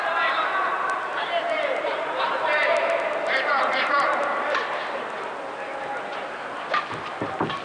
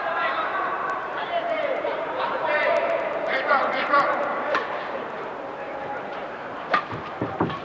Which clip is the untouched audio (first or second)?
first